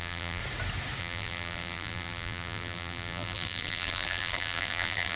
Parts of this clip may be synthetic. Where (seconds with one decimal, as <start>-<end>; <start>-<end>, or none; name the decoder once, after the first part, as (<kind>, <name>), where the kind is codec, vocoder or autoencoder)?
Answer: 0.0-0.4 (vocoder, BigVGAN v2); 1.0-5.2